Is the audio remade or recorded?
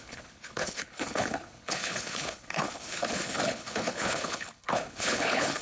remade